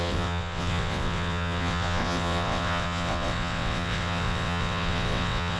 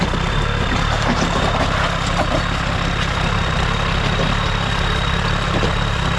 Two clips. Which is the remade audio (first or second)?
first